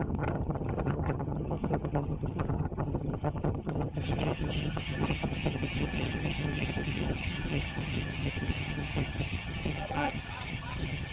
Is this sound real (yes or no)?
no